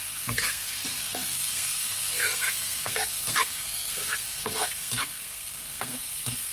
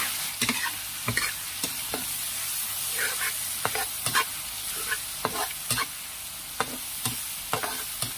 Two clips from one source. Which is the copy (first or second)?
first